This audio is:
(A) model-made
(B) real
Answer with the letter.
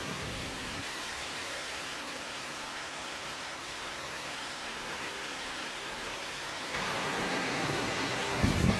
A